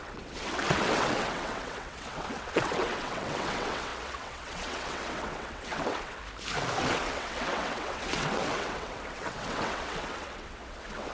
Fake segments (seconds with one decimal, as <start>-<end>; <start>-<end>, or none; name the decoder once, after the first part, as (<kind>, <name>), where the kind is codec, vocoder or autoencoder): 0.0-6.2 (vocoder, WaveNeXt); 6.8-11.1